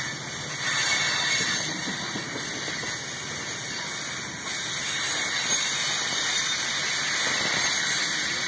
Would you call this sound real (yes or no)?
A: yes